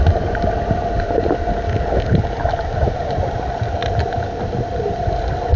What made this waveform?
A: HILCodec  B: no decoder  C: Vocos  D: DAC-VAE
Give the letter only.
B